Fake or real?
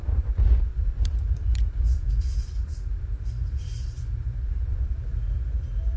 fake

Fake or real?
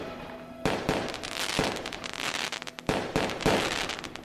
real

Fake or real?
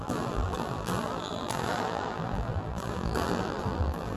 fake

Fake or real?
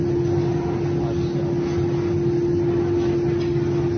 real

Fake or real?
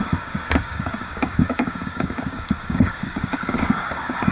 fake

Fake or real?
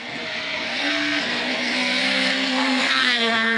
fake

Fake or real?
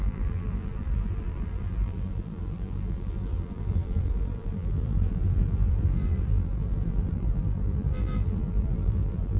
fake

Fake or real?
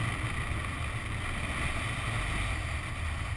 real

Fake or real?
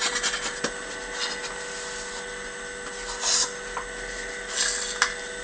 real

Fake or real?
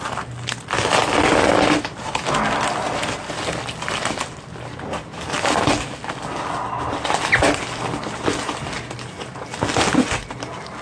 real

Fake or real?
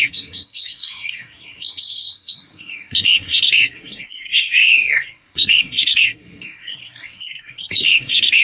fake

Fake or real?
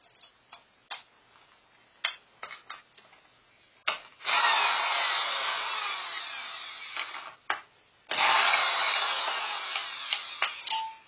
real